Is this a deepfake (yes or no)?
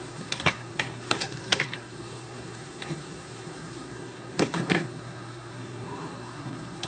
yes